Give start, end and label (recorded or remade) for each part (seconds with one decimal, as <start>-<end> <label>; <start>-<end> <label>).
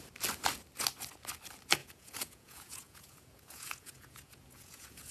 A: 0.0-1.8 recorded; 1.8-5.1 remade